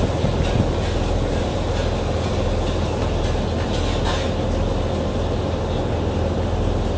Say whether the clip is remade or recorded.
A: recorded